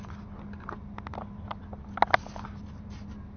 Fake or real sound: real